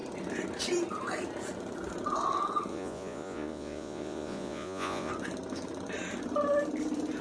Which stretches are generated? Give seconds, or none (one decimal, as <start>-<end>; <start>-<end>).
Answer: 2.7-5.1